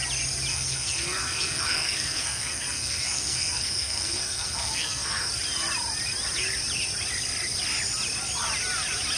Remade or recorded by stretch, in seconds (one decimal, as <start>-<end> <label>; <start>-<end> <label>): 0.0-0.5 recorded; 0.5-5.3 remade; 5.3-9.2 recorded